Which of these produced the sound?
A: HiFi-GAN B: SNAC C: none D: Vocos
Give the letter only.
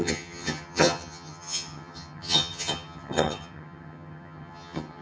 A